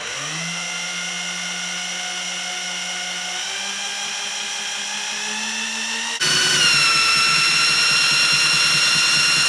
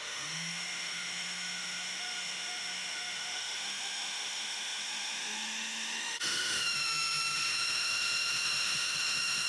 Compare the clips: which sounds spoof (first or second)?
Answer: second